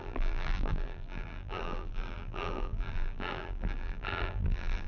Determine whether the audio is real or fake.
fake